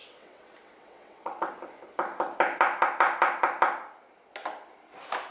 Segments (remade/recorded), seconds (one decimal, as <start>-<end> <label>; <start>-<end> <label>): 0.0-1.5 remade; 1.5-5.3 recorded